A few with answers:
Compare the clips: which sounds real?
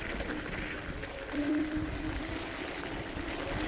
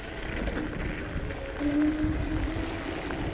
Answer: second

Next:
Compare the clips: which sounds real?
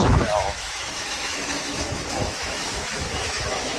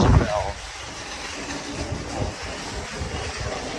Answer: second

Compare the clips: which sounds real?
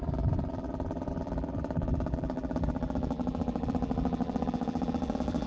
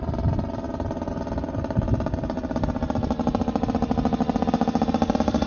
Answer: second